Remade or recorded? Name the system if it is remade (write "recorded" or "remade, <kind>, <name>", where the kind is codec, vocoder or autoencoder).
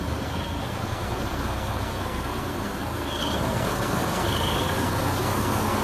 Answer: remade, codec, SNAC